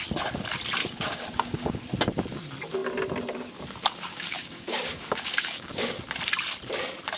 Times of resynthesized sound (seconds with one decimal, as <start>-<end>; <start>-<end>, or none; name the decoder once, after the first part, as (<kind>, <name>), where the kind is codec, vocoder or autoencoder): 0.8-1.8 (codec, DAC); 4.1-6.0